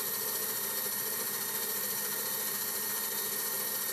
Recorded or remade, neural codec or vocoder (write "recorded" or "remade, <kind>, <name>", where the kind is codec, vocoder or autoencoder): recorded